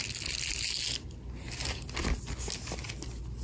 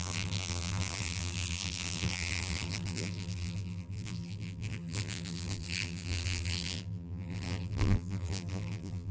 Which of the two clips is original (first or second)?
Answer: first